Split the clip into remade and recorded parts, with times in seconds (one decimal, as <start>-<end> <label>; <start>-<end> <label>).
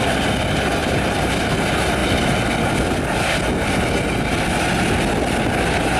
0.0-0.8 recorded; 0.8-1.6 remade; 1.6-2.0 recorded; 2.0-2.5 remade; 2.5-6.0 recorded